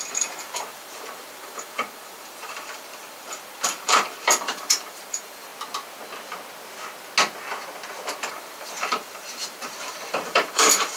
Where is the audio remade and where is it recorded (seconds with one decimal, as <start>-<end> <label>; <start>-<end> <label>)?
0.0-5.5 remade; 5.5-8.3 recorded; 8.3-11.0 remade